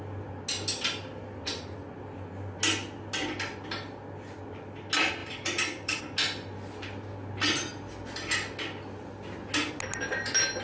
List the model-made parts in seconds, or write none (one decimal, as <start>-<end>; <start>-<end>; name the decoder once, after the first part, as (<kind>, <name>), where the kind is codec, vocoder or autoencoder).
5.2-6.0 (vocoder, BigVGAN v2)